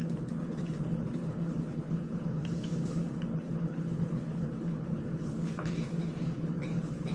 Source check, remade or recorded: remade